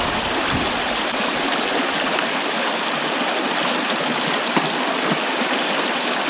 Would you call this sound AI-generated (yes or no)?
no